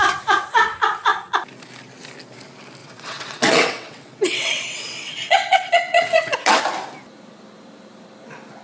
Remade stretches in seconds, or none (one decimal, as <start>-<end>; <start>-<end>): 2.8-6.6